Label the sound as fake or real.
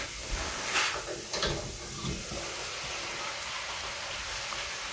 real